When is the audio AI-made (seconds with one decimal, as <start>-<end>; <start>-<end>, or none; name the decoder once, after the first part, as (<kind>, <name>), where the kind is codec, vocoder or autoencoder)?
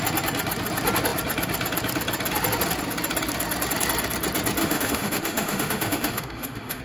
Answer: 4.6-6.8 (autoencoder, DAC-VAE)